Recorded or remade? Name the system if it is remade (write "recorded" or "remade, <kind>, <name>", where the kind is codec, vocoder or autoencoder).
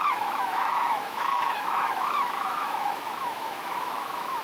remade, autoencoder, DAC-VAE